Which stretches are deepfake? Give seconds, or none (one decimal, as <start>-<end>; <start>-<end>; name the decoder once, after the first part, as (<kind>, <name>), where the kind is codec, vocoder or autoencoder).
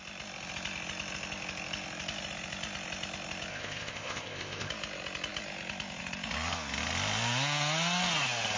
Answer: 3.5-4.7 (codec, ZipCodec)